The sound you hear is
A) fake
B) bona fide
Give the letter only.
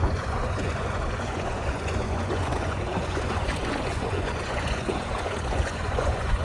A